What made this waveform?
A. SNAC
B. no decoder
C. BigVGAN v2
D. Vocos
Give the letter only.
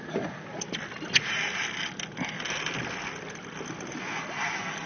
B